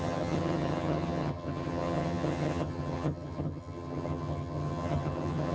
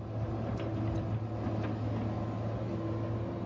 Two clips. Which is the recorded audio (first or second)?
second